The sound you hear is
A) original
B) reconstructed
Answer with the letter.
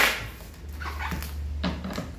A